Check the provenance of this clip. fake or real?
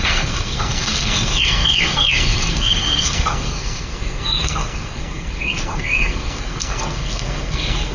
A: fake